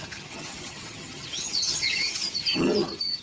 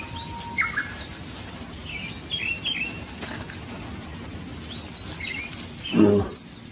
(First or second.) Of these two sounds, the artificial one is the first